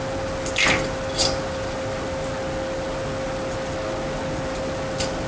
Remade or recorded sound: recorded